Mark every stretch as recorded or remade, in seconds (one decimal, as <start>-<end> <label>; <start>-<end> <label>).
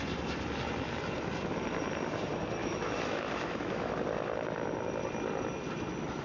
0.0-2.6 recorded; 2.6-3.9 remade; 3.9-6.2 recorded